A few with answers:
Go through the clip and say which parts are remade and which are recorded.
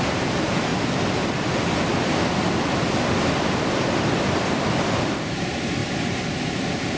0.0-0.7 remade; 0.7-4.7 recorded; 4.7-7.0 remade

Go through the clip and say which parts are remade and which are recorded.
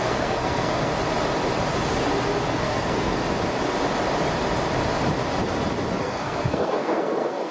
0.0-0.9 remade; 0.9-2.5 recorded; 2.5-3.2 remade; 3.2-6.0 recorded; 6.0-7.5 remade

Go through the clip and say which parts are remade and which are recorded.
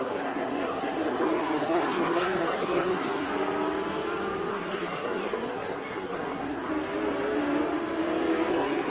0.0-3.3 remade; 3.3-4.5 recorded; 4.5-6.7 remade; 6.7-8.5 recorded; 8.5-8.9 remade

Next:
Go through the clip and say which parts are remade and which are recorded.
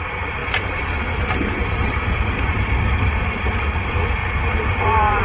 0.0-0.4 remade; 0.4-1.3 recorded; 1.3-4.2 remade; 4.2-5.2 recorded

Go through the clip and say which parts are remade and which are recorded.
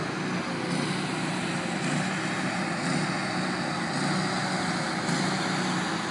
0.0-6.1 recorded